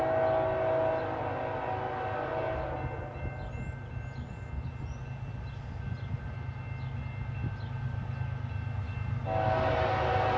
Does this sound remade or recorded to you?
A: recorded